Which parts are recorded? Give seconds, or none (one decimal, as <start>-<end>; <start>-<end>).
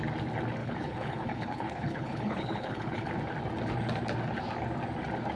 0.0-0.6; 3.1-5.4